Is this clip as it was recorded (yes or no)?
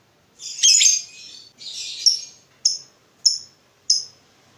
yes